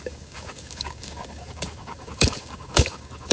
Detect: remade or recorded remade